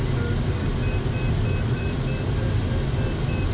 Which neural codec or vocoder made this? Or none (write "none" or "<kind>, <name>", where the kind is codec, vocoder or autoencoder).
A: none